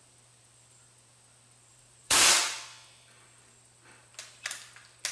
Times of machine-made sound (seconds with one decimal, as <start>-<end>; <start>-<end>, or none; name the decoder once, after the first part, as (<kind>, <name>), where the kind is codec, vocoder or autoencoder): 1.7-2.4 (vocoder, BigVGAN v2)